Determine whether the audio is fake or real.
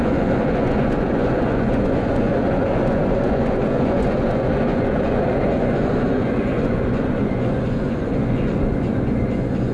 fake